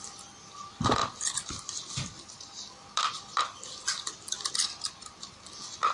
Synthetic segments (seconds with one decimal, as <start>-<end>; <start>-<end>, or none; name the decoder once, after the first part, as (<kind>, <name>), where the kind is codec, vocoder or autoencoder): 0.0-1.0 (vocoder, BigVGAN v2); 4.5-5.9